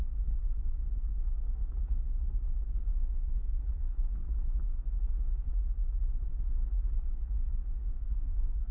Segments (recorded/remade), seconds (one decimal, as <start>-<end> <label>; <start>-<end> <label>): 0.0-1.1 recorded; 1.1-1.7 remade; 1.7-2.9 recorded; 2.9-4.1 remade; 4.1-7.8 recorded; 7.8-8.7 remade